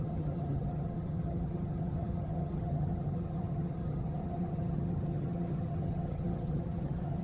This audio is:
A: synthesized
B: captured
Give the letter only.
A